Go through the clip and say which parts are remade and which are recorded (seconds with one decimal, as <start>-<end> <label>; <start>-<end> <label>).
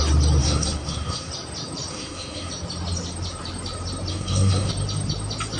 0.0-0.4 recorded; 0.4-1.3 remade; 1.3-1.9 recorded; 1.9-2.5 remade; 2.5-4.1 recorded; 4.1-4.7 remade; 4.7-5.6 recorded